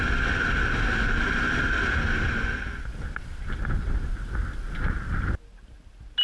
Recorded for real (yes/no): yes